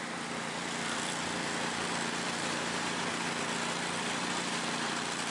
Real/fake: real